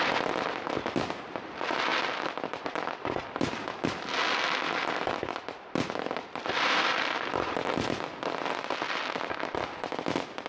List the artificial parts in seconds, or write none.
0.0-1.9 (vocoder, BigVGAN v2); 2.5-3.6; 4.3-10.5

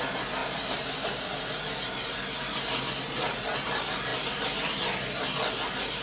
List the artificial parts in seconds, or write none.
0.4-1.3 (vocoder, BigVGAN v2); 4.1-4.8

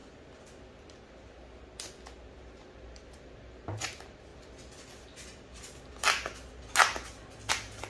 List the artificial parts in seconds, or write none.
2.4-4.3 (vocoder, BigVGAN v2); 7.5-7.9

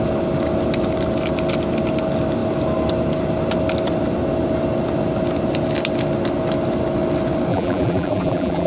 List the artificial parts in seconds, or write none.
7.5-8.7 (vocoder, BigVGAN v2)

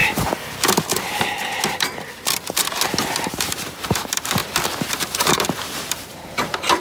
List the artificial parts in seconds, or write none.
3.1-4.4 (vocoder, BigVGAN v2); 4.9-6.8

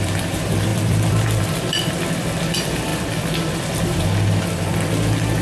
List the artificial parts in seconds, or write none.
0.0-5.4 (vocoder, BigVGAN v2)

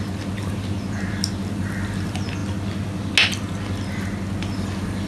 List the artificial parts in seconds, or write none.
none

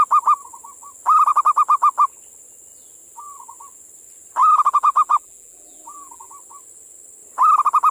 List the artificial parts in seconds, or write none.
4.4-6.3 (vocoder, BigVGAN v2)